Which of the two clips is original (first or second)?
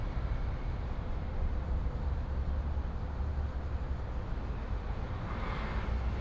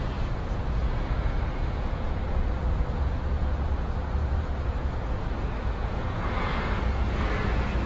first